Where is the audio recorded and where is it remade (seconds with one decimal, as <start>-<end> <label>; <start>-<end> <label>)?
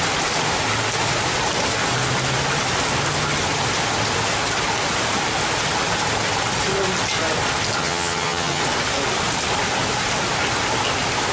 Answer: 0.0-7.8 recorded; 7.8-8.6 remade; 8.6-11.3 recorded